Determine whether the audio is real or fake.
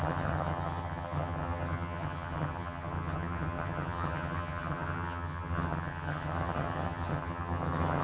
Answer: fake